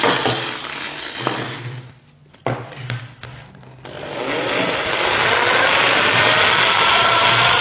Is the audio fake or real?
real